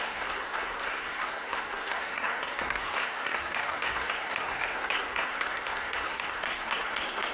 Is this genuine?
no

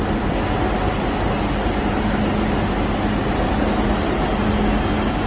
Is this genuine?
yes